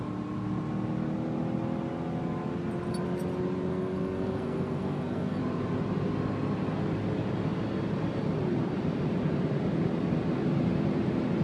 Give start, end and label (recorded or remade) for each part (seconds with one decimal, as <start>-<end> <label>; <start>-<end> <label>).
0.0-3.7 recorded; 3.7-5.4 remade; 5.4-11.4 recorded